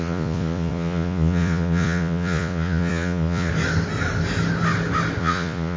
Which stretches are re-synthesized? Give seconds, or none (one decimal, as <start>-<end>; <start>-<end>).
0.0-3.5; 5.2-5.8